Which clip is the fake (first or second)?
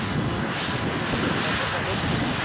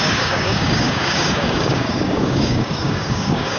second